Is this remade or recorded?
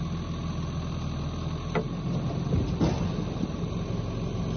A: recorded